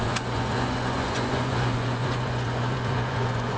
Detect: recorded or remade remade